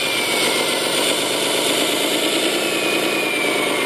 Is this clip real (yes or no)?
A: yes